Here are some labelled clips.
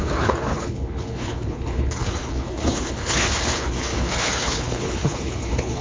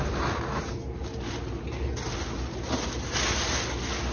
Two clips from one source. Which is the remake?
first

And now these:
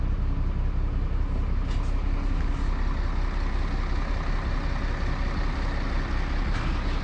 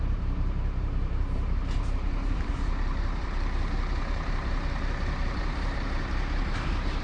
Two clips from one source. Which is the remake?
second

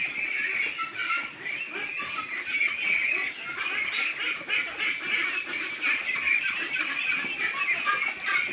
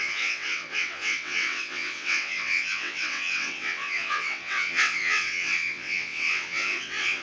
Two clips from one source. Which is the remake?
second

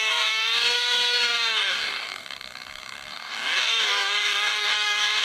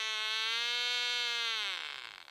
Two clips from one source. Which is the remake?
first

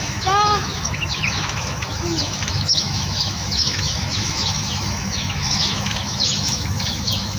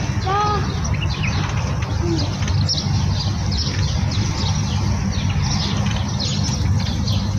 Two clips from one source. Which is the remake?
first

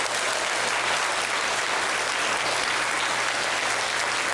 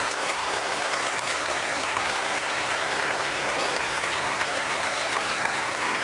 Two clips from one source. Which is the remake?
second